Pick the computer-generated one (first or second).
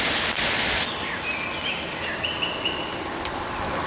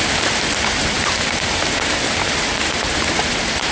second